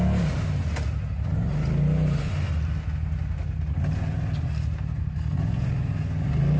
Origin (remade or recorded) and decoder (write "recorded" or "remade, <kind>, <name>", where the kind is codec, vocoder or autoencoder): recorded